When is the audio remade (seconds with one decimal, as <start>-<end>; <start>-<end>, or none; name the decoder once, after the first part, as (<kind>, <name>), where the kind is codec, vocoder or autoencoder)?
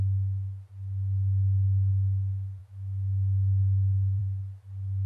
2.6-4.2 (autoencoder, DAC-VAE)